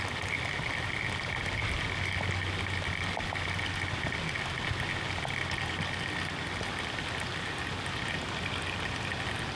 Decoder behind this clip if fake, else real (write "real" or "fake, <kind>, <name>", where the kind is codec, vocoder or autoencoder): real